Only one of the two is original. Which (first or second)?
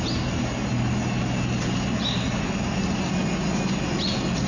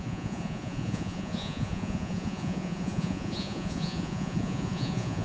first